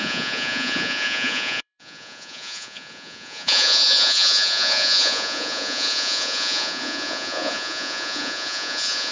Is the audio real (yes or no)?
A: no